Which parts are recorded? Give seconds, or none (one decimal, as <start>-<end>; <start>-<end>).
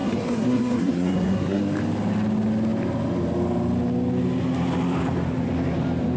1.6-6.2